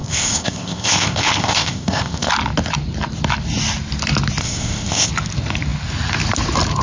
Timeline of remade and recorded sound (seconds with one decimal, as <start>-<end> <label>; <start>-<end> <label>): 0.0-2.3 remade; 2.3-4.4 recorded; 4.4-5.1 remade; 5.1-6.8 recorded